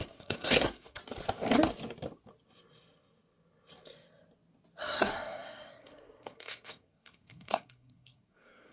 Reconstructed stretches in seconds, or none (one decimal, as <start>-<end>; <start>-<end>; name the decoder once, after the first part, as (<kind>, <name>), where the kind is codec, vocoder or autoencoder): 0.0-1.0 (codec, SNAC); 4.8-8.7